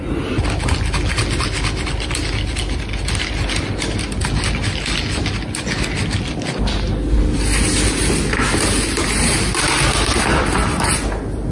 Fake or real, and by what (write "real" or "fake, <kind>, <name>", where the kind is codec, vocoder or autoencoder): real